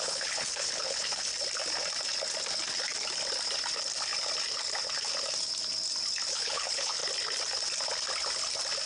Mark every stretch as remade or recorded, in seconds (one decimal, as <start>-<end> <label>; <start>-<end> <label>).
0.0-1.3 remade; 1.3-6.3 recorded; 6.3-7.0 remade; 7.0-8.9 recorded